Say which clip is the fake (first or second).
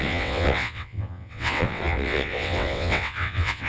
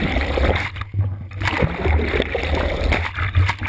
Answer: first